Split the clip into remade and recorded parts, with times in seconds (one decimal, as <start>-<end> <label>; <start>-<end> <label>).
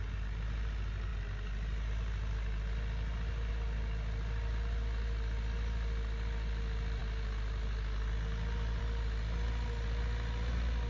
0.0-10.9 recorded